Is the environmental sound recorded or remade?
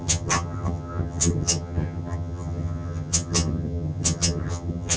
remade